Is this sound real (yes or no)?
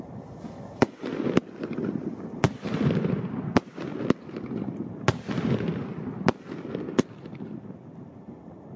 yes